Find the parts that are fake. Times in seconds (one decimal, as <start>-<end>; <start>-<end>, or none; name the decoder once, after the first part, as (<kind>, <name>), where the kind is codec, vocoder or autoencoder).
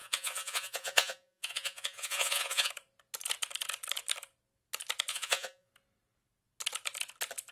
0.0-2.7 (vocoder, Vocos); 5.1-5.7